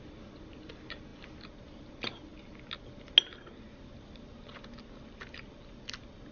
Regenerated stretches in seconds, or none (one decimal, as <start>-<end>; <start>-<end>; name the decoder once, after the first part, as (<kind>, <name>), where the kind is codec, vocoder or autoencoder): none